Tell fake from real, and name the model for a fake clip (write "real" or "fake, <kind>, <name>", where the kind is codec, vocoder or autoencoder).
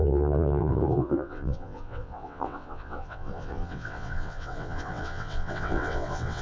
fake, vocoder, WaveNeXt